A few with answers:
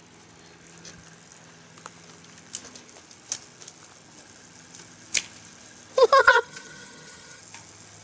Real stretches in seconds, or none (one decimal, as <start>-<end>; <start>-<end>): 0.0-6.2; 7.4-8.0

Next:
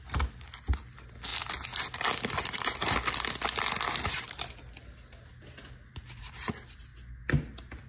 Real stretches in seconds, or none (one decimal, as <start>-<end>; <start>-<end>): 0.0-7.9

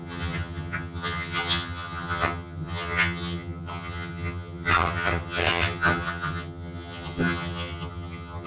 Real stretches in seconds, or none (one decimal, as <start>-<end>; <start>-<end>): none

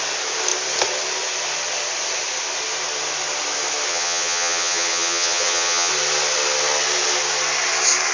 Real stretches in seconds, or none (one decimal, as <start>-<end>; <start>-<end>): 0.0-3.9; 5.9-8.1

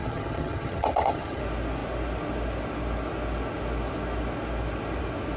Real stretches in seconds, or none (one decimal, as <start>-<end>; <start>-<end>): 1.4-5.4

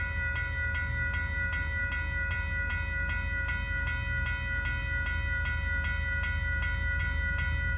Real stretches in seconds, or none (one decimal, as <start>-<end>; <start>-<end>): 0.0-7.8

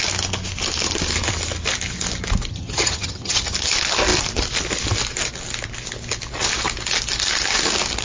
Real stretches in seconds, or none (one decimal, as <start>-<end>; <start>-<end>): 0.0-2.5; 3.4-8.0